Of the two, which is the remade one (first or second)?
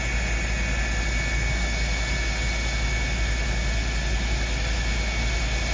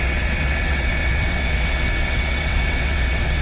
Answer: second